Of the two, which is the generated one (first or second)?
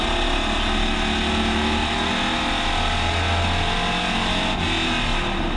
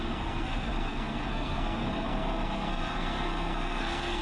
second